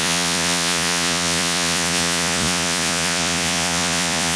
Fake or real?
fake